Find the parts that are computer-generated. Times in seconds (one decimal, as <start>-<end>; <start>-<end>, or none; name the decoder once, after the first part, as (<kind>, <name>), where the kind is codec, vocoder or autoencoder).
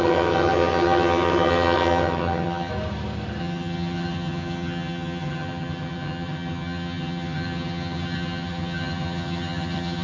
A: 0.0-2.7 (vocoder, HiFi-GAN); 3.4-10.0